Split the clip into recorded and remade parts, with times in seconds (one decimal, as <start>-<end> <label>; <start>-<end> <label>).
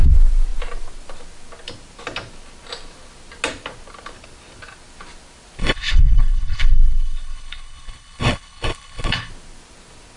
0.0-5.6 recorded; 5.6-9.3 remade; 9.3-10.2 recorded